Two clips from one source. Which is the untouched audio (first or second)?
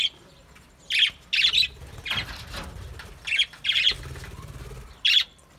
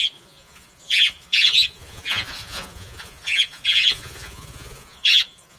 first